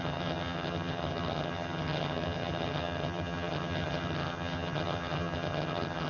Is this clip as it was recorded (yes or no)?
no